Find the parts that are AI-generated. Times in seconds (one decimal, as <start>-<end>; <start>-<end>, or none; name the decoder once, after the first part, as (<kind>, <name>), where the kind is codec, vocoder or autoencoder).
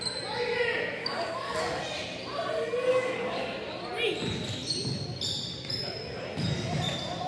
1.0-1.8 (codec, DAC); 2.9-3.5